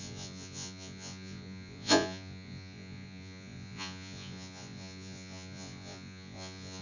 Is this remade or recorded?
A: remade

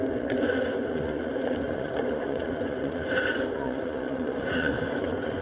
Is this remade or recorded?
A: remade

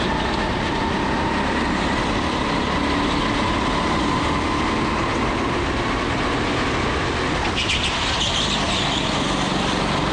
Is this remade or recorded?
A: recorded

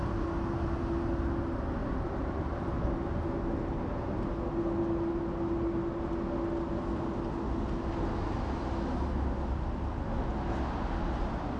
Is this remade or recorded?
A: recorded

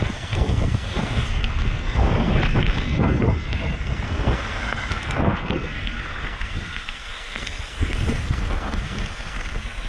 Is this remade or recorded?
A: remade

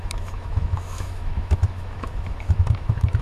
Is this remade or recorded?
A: remade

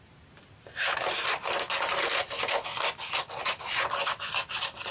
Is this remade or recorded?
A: recorded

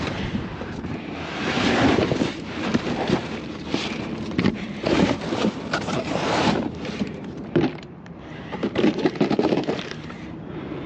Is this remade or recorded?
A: remade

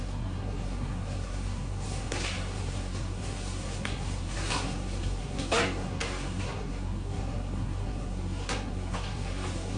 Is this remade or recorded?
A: remade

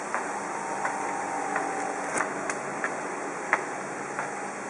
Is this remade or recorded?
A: recorded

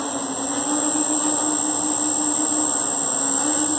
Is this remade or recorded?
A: recorded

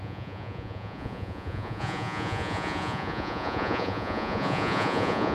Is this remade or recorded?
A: remade